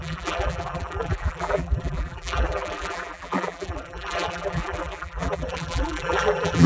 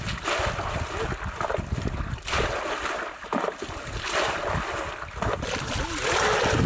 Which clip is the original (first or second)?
second